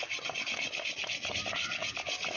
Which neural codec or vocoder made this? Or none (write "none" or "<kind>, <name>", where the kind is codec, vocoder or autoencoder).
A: none